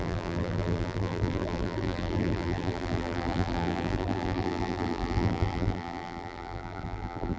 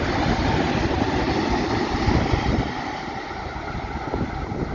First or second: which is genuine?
second